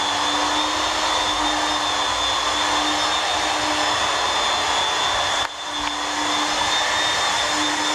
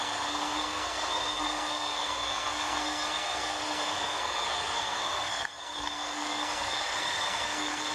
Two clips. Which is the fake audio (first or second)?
second